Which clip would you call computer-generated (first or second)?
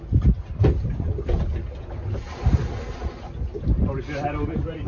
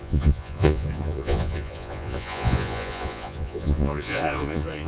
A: second